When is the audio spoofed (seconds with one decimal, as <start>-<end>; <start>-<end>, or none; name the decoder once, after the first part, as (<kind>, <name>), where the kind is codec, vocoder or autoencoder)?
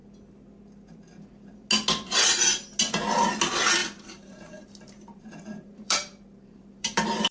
3.8-7.3 (vocoder, BigVGAN v2)